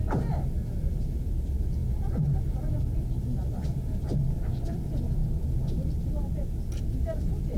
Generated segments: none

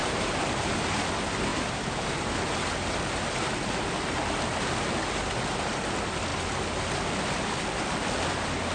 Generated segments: 0.0-0.7 (vocoder, BigVGAN v2); 1.5-2.3

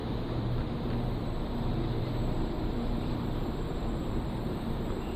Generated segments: 0.0-5.2 (vocoder, BigVGAN v2)

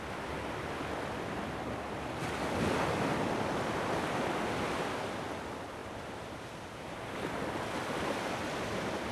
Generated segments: 5.8-7.1 (vocoder, BigVGAN v2)

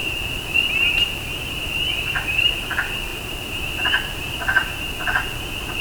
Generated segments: 0.0-2.5 (vocoder, BigVGAN v2); 3.1-4.8

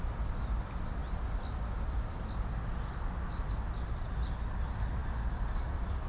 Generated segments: none